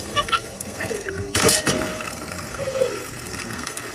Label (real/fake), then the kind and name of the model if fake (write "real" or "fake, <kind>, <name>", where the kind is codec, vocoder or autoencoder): fake, codec, SNAC